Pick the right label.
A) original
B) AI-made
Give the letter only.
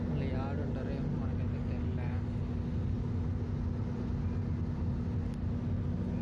A